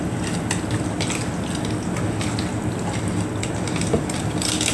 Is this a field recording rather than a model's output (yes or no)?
yes